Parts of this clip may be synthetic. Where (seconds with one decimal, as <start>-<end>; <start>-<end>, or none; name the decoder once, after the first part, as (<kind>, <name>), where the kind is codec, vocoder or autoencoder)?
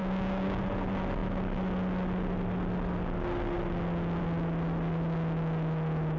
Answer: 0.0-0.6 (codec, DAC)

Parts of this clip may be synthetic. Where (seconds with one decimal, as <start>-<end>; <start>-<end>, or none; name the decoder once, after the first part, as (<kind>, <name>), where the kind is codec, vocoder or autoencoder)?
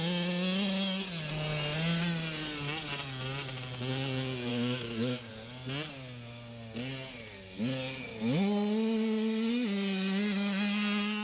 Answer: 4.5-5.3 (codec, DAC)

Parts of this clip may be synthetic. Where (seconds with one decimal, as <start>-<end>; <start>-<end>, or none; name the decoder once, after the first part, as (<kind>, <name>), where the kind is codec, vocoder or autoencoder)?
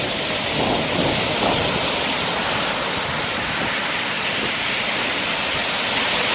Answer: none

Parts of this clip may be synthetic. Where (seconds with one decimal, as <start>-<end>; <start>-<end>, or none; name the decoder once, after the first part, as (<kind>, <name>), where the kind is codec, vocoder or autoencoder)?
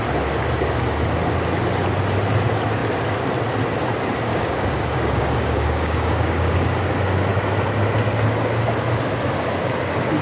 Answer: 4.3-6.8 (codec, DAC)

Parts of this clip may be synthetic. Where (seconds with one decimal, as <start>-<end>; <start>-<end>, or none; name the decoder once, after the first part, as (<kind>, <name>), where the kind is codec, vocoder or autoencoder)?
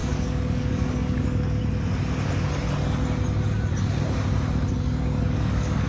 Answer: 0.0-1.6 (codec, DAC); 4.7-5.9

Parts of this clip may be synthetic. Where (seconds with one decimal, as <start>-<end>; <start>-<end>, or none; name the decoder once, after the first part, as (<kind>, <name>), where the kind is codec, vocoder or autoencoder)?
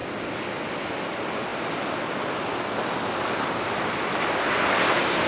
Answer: none